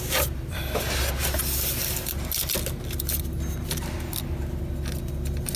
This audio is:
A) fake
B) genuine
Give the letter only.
B